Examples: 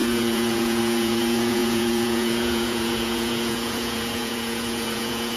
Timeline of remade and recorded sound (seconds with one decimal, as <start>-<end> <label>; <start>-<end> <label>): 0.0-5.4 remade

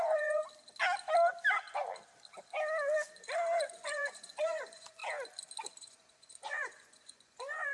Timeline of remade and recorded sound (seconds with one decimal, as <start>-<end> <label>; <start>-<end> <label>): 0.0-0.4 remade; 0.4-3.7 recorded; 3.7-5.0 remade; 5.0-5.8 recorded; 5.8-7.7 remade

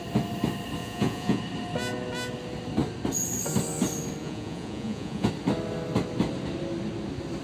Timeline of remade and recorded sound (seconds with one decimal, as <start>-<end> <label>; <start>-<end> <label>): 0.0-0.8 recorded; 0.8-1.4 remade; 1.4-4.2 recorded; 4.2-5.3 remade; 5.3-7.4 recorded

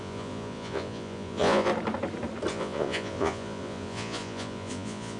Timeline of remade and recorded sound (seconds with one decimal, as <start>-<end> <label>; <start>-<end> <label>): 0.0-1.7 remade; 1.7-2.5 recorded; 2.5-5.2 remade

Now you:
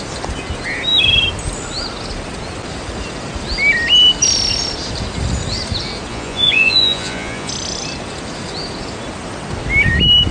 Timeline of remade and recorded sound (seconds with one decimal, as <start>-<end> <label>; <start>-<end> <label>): 0.0-6.1 recorded; 6.1-7.5 remade; 7.5-10.3 recorded